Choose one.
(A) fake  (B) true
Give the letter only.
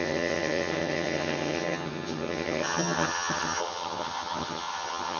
A